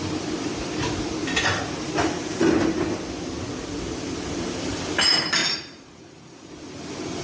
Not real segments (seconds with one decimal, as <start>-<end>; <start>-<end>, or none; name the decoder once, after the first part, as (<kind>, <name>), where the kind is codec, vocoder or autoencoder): 5.4-6.5 (vocoder, Vocos)